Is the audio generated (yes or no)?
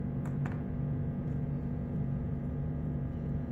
yes